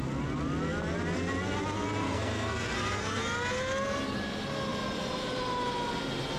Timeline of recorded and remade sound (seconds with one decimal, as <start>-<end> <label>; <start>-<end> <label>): 0.0-2.0 recorded; 2.0-3.2 remade; 3.2-6.4 recorded